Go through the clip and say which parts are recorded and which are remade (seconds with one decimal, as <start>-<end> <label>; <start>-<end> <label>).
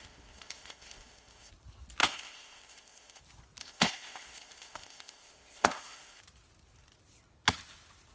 0.0-1.5 remade; 1.5-2.0 recorded; 2.0-3.2 remade; 3.2-3.6 recorded; 3.6-6.2 remade; 6.2-8.1 recorded